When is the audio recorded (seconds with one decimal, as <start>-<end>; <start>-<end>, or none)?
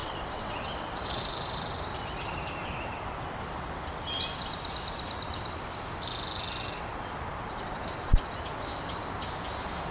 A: 1.2-9.9